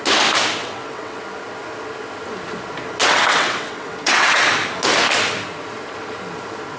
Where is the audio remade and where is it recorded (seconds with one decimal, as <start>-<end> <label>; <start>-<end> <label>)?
0.0-0.6 recorded; 0.6-1.2 remade; 1.2-3.0 recorded; 3.0-4.5 remade; 4.5-6.8 recorded